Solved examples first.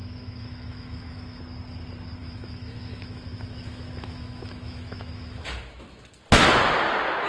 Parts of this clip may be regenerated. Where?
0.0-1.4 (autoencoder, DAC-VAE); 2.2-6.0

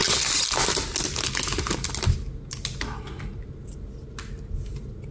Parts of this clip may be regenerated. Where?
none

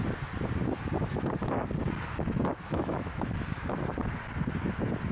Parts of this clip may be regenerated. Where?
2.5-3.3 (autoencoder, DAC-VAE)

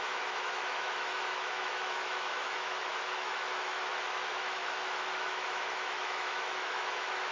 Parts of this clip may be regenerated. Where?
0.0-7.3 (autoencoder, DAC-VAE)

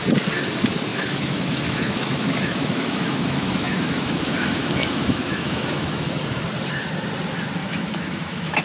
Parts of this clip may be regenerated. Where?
0.9-6.1 (autoencoder, DAC-VAE); 7.6-8.6

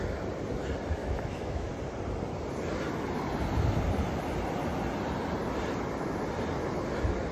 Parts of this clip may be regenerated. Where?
1.0-1.7 (autoencoder, DAC-VAE)

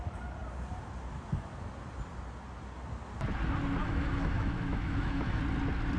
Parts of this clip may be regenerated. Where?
3.8-5.4 (autoencoder, DAC-VAE)

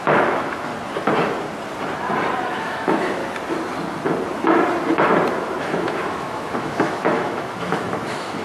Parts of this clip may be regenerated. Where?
0.0-0.7 (autoencoder, DAC-VAE); 2.5-3.2; 5.6-8.4